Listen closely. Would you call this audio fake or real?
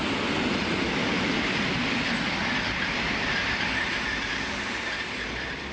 real